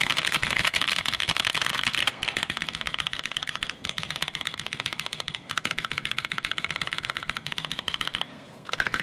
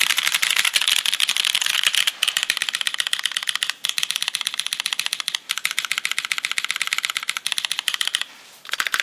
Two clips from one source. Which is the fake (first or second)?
first